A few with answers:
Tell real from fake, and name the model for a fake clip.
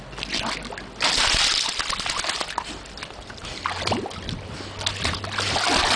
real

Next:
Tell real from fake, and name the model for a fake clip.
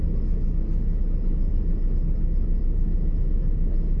real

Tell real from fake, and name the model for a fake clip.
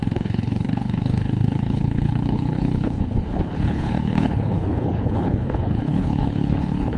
fake, codec, HILCodec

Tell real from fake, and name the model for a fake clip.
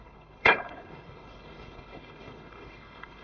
fake, codec, HILCodec